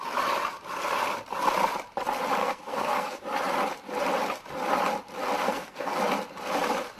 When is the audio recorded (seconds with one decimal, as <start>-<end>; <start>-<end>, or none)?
0.0-2.4; 3.2-5.4; 6.0-7.0